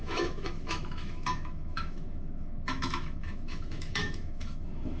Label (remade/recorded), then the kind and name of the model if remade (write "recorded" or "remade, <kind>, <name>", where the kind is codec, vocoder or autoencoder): remade, autoencoder, DAC-VAE